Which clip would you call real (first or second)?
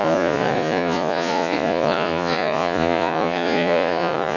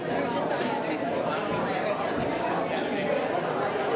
second